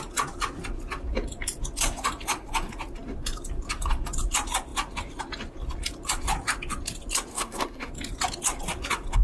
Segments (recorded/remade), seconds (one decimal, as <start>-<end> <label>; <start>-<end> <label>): 0.0-7.3 recorded; 7.3-7.9 remade; 7.9-9.2 recorded